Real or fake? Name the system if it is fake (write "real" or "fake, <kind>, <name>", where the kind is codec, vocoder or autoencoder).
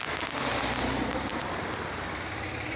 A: real